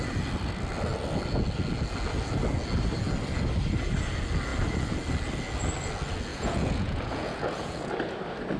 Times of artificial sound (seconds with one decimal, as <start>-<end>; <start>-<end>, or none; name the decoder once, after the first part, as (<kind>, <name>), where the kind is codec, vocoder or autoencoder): 6.3-7.9 (vocoder, Vocos)